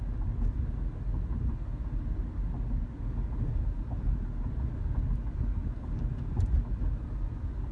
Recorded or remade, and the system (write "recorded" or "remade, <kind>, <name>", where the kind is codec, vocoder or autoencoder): recorded